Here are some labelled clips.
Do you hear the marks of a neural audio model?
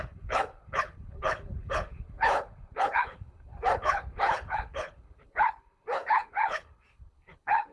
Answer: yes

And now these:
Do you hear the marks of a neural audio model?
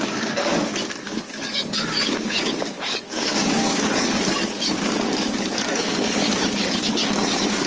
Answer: yes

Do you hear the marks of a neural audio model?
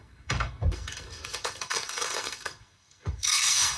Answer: yes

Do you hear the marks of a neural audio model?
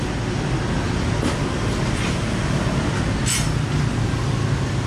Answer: no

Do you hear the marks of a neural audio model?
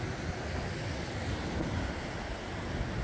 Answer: no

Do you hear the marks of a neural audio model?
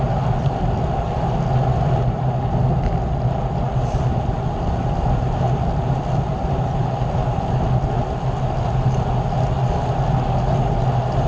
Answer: no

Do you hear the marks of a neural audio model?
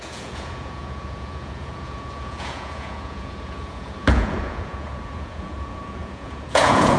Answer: yes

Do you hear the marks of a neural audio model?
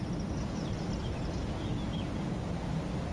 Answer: no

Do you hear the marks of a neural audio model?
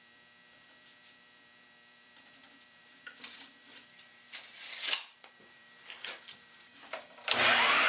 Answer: yes